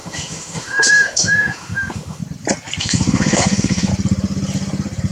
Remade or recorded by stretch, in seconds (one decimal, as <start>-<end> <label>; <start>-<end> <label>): 0.0-2.2 remade; 2.2-2.8 recorded; 2.8-3.9 remade; 3.9-5.1 recorded